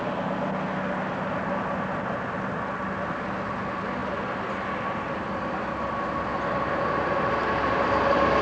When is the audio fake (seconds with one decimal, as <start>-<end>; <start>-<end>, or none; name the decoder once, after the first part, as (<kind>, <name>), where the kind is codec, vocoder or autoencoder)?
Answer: none